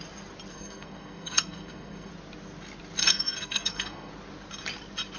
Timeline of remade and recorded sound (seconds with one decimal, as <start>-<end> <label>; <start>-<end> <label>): 0.0-0.5 recorded; 0.5-2.1 remade; 2.1-3.0 recorded; 3.0-4.1 remade; 4.1-5.2 recorded